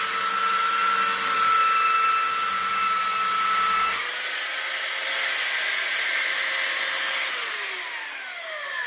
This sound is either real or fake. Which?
real